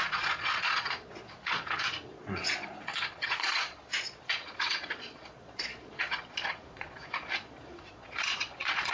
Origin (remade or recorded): remade